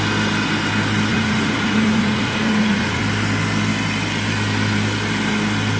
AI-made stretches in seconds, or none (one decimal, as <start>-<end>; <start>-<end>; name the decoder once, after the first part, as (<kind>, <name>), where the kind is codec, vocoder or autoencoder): 1.1-3.0 (vocoder, Vocos)